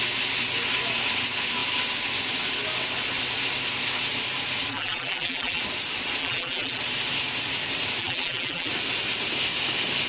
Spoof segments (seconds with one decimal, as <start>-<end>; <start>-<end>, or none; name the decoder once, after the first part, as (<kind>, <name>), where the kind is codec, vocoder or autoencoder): 4.7-5.6 (vocoder, BigVGAN v2); 6.2-6.8; 8.0-8.7